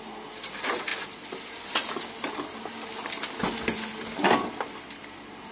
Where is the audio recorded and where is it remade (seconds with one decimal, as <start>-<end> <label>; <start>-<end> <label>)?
0.0-5.5 recorded